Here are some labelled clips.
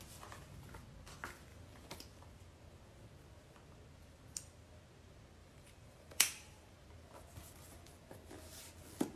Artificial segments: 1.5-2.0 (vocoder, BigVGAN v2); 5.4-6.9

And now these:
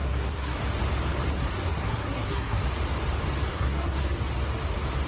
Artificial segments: 0.0-0.6 (codec, SNAC); 1.3-2.6; 3.5-4.2

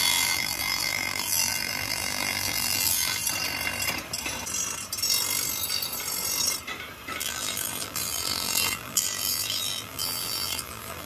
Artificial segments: 0.0-3.2 (vocoder, BigVGAN v2); 7.2-11.1

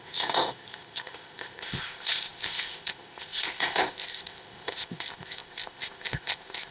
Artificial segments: 0.0-6.7 (codec, ZipCodec)